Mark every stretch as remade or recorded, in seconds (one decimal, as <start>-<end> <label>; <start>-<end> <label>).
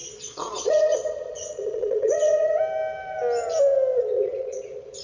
0.0-2.6 remade; 2.6-4.0 recorded; 4.0-5.0 remade